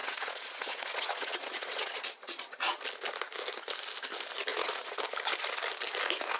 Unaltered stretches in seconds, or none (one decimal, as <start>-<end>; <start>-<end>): 2.8-4.5; 5.0-6.4